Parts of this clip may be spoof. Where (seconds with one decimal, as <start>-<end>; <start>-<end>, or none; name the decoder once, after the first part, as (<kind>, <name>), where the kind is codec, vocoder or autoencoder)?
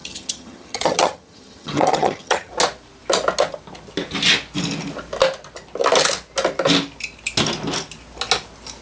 0.0-2.5 (vocoder, HiFi-GAN)